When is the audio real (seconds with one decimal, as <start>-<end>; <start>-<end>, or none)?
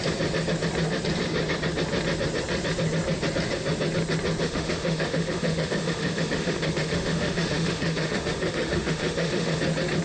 0.0-4.4; 9.6-10.0